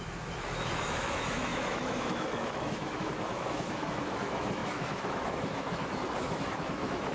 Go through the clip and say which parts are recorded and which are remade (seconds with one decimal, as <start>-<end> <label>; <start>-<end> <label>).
0.0-7.1 remade

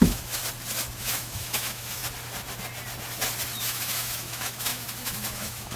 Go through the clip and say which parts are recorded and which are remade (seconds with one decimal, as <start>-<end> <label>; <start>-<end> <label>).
0.0-0.4 remade; 0.4-1.0 recorded; 1.0-2.0 remade; 2.0-3.6 recorded; 3.6-5.8 remade

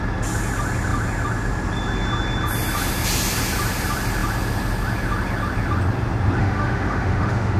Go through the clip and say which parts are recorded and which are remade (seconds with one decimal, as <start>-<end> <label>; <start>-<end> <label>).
0.0-6.4 recorded; 6.4-7.6 remade

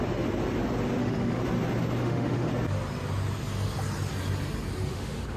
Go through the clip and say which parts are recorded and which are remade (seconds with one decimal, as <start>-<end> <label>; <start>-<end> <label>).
0.0-1.0 recorded; 1.0-1.4 remade; 1.4-2.0 recorded; 2.0-2.5 remade; 2.5-4.9 recorded; 4.9-5.4 remade

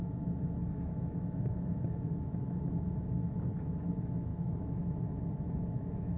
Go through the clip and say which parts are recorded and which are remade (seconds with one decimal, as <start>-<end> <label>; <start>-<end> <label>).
0.0-6.2 remade

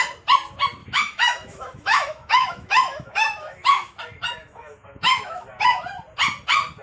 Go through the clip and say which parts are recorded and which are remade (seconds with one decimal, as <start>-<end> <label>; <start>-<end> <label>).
0.0-0.8 recorded; 0.8-4.0 remade; 4.0-4.4 recorded; 4.4-5.8 remade; 5.8-6.8 recorded

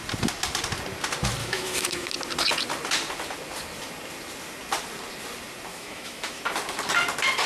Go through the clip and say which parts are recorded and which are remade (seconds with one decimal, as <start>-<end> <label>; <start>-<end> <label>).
0.0-1.4 recorded; 1.4-2.1 remade; 2.1-5.7 recorded; 5.7-6.4 remade; 6.4-7.5 recorded